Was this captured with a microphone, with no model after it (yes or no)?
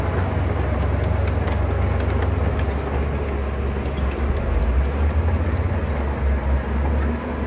yes